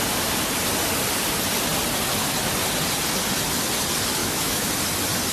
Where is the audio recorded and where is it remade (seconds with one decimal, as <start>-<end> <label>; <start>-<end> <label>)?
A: 0.0-4.2 recorded; 4.2-4.7 remade; 4.7-5.3 recorded